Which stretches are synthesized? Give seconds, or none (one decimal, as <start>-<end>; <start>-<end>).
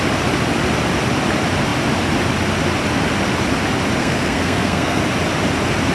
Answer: 4.0-5.0